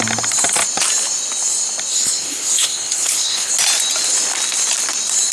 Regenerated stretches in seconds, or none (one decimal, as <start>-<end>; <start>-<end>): 1.9-3.5